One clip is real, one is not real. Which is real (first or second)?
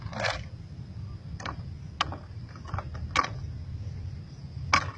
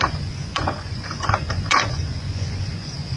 first